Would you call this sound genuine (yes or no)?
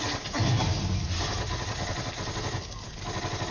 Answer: yes